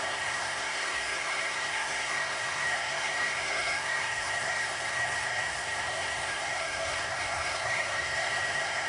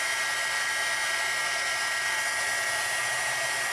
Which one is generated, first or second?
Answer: first